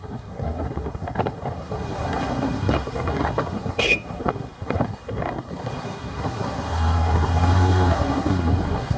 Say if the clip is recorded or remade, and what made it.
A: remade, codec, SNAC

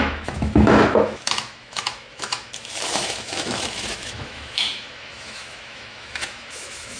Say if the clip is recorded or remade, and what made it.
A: remade, autoencoder, DAC-VAE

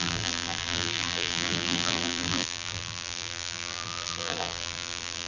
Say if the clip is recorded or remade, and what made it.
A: remade, vocoder, BigVGAN v2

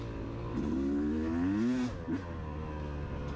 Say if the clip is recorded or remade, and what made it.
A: recorded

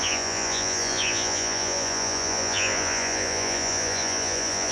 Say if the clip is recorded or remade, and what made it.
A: remade, vocoder, Vocos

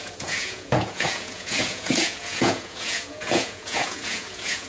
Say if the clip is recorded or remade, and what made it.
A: remade, vocoder, Vocos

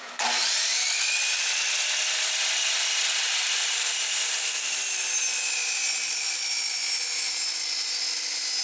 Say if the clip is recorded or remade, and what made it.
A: recorded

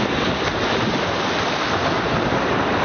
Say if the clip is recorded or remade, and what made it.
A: recorded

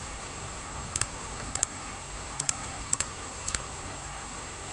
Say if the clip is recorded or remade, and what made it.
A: remade, codec, SNAC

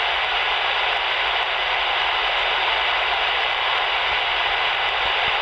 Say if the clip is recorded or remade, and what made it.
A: recorded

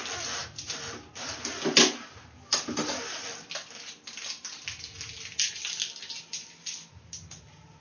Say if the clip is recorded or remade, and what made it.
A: recorded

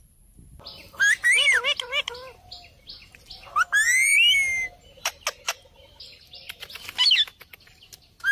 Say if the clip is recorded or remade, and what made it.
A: recorded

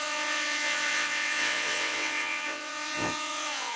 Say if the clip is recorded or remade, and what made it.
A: remade, vocoder, WaveNeXt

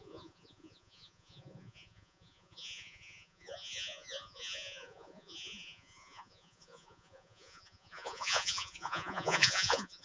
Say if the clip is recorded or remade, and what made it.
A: remade, vocoder, Vocos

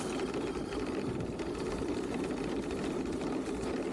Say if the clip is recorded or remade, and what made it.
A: recorded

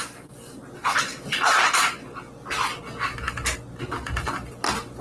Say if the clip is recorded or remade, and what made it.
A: recorded